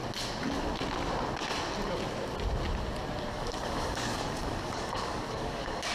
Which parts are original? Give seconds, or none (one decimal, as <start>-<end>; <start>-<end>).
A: 0.0-3.3